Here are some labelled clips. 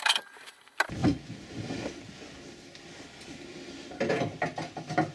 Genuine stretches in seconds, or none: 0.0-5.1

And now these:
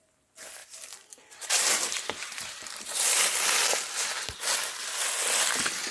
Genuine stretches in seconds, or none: 0.0-0.6; 4.1-5.9

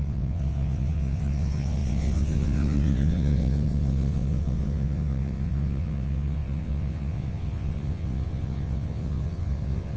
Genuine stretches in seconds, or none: none

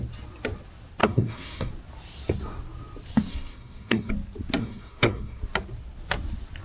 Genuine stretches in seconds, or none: 0.0-1.0; 1.7-3.3; 4.1-4.6; 5.4-6.6

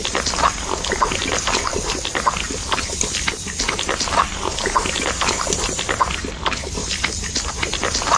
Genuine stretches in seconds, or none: 0.0-8.2

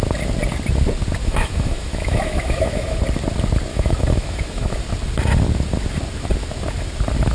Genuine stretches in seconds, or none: 0.0-1.2; 3.0-3.7; 4.8-7.3

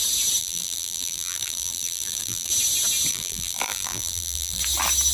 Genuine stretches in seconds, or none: 0.0-0.4; 2.5-3.1; 4.6-5.1

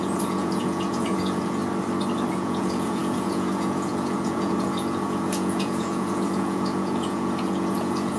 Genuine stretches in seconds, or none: 1.6-2.3